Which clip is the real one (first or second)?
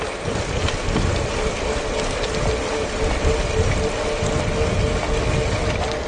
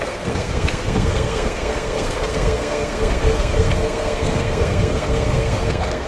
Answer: first